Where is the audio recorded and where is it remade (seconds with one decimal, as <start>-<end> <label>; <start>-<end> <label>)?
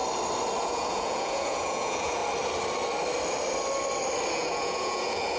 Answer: 0.0-0.6 recorded; 0.6-2.2 remade; 2.2-4.3 recorded; 4.3-5.4 remade